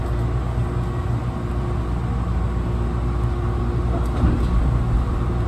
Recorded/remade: recorded